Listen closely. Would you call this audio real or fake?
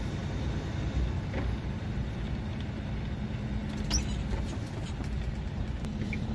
real